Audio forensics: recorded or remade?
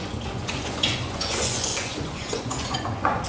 remade